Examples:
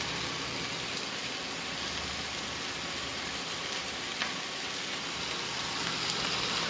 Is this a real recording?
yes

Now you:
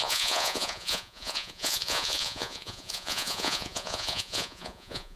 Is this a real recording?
no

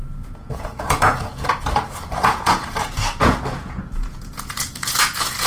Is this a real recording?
no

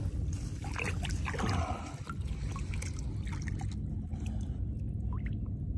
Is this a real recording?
yes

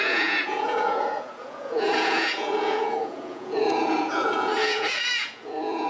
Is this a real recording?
no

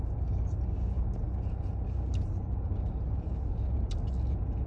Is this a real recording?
yes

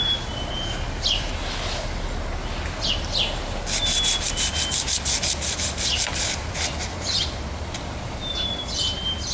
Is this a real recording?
yes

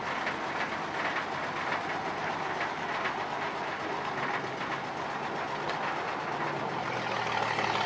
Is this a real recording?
yes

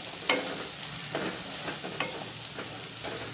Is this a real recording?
yes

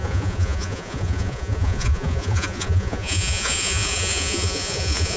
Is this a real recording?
no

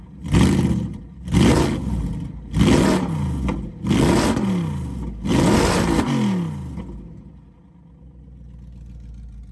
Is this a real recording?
yes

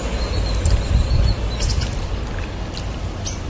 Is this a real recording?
yes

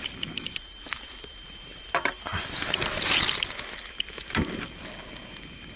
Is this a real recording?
yes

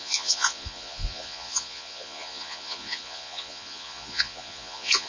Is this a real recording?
no